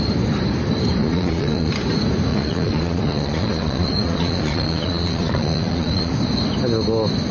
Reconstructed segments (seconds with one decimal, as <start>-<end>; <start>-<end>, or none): 1.0-1.7; 2.3-6.1